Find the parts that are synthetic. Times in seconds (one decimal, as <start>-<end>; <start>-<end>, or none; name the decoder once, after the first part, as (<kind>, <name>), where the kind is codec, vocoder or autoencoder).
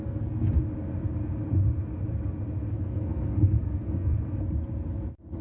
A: 0.0-0.6 (codec, SNAC); 2.7-4.1